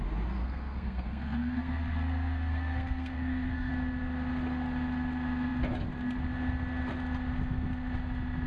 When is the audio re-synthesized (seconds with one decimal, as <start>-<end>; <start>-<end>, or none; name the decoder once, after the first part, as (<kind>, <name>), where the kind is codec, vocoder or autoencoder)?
0.4-3.7 (codec, SNAC)